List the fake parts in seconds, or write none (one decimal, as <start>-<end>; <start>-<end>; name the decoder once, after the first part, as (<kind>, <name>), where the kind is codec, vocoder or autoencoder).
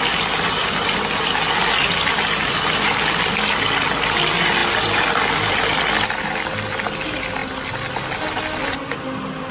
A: none